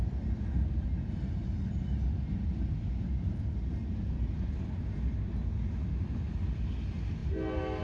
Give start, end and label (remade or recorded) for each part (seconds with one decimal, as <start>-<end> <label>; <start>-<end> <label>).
0.0-7.8 recorded